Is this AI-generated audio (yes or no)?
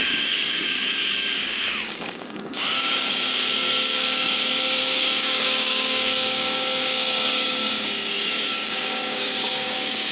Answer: yes